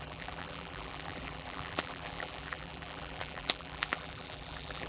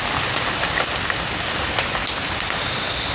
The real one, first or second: second